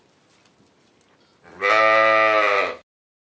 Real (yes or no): yes